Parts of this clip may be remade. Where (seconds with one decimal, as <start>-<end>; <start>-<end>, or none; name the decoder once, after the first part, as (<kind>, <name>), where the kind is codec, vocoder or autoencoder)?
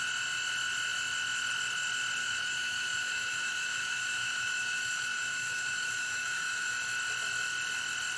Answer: 2.2-6.7 (autoencoder, DAC-VAE)